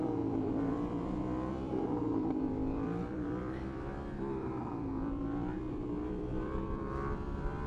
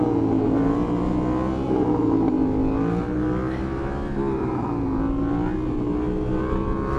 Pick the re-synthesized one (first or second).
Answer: first